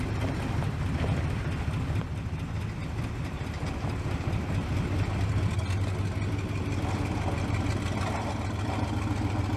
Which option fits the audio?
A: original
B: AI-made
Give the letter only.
A